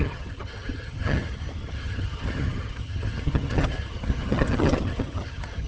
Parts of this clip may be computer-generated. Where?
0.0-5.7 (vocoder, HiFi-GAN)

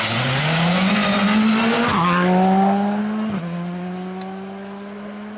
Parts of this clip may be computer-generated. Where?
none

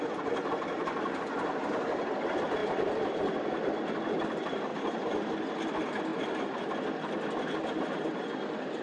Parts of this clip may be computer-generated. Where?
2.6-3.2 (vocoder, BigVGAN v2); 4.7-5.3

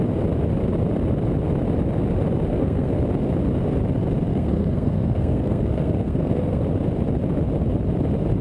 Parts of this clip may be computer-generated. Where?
2.5-3.0 (codec, SNAC); 4.3-6.6

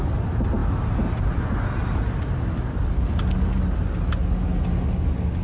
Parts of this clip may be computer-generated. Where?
none